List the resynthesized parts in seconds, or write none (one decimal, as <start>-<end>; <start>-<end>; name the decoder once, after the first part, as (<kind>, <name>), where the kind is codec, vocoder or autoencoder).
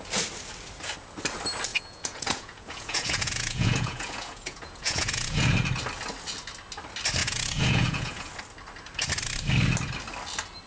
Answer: 1.7-5.5 (vocoder, Vocos); 7.2-8.3